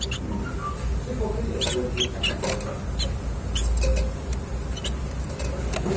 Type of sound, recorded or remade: recorded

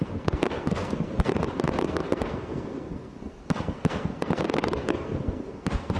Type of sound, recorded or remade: remade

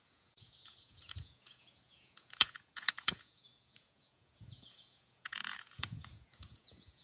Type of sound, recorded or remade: remade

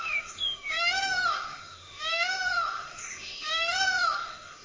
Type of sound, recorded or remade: remade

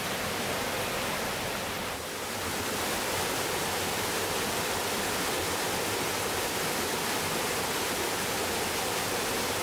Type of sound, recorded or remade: recorded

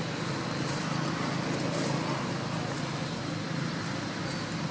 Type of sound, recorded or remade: recorded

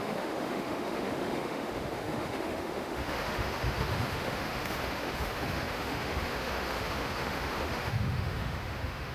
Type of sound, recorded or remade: remade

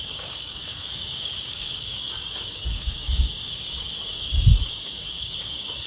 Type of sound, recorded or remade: remade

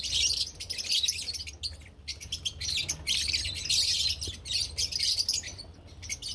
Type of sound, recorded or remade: recorded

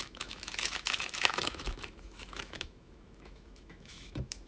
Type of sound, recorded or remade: remade